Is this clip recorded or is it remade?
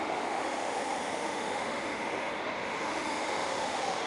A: remade